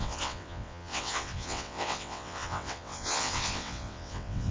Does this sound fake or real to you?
fake